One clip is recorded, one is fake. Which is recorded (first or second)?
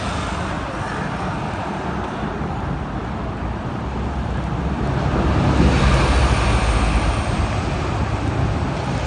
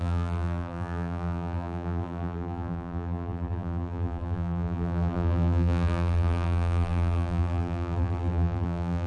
first